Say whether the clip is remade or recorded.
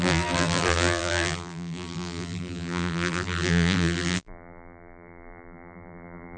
remade